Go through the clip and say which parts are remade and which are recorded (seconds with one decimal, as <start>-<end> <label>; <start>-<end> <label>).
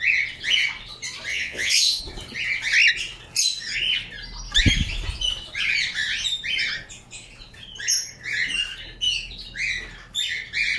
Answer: 0.0-1.3 recorded; 1.3-2.0 remade; 2.0-10.8 recorded